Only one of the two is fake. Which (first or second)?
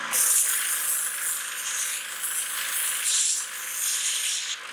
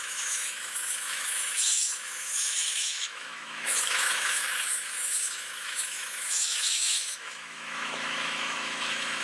second